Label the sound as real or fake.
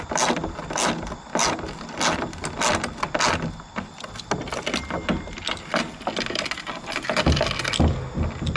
real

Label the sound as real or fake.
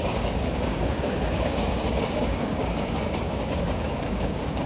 fake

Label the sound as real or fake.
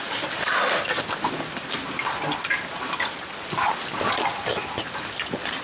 real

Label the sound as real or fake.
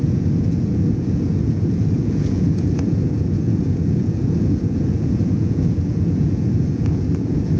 fake